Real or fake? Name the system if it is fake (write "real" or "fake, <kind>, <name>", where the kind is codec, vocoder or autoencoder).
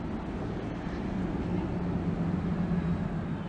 real